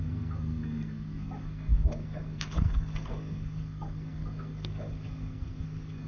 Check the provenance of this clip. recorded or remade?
remade